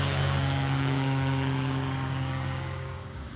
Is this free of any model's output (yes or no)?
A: no